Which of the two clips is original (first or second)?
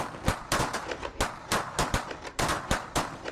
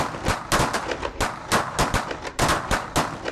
second